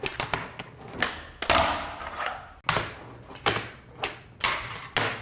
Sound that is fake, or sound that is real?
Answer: real